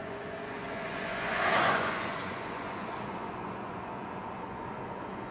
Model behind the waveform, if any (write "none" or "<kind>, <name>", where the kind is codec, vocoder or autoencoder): vocoder, Vocos